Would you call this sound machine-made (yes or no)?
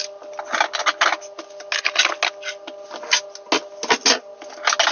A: no